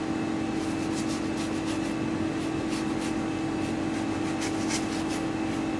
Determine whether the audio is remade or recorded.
recorded